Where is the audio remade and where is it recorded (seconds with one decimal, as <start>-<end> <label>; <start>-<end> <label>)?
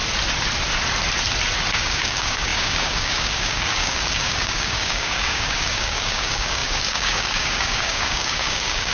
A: 0.0-1.7 recorded; 1.7-8.9 remade